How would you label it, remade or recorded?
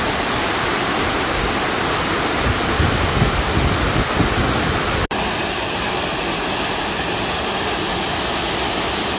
recorded